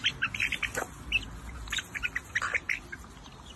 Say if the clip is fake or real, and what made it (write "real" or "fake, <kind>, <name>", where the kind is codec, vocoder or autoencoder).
real